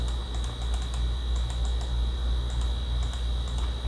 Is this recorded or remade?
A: recorded